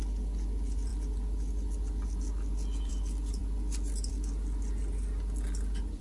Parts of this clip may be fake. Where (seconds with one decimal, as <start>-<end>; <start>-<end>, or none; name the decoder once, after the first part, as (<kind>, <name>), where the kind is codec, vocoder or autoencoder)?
none